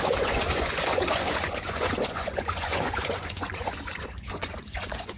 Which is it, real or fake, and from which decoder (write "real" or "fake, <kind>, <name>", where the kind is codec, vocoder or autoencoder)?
fake, vocoder, Vocos